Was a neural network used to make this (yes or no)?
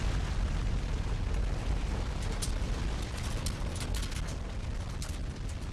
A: no